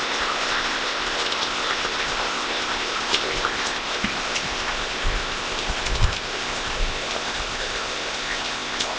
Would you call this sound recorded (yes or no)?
no